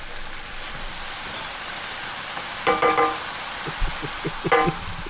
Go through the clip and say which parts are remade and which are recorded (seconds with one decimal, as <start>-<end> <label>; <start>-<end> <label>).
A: 0.0-5.1 recorded